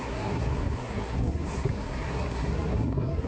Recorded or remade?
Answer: remade